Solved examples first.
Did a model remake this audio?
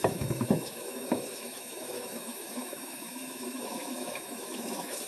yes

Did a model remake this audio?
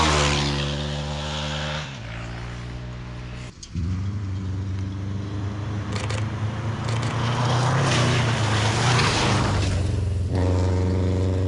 no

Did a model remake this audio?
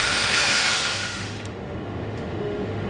yes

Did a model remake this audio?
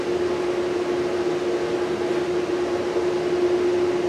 no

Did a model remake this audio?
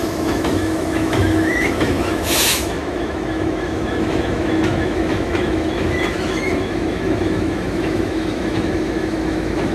yes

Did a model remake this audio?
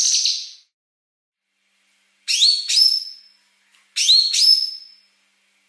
no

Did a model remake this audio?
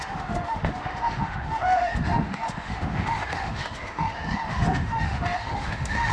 yes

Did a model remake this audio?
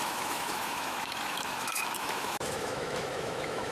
yes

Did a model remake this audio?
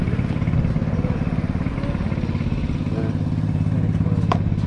no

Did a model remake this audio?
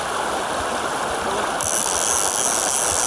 no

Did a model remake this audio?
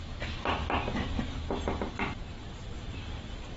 no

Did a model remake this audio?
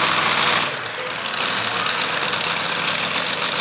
no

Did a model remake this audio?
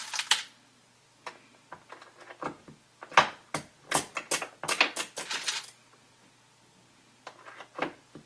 no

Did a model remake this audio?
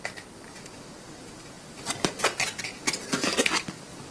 no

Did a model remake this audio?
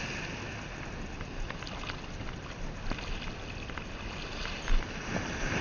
no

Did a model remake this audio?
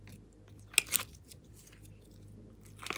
no